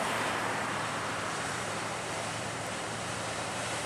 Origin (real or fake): fake